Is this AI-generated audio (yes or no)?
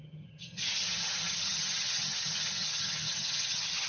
yes